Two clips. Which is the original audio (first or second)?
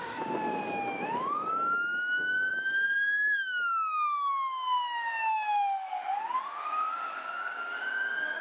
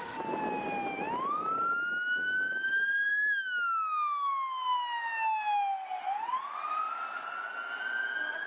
second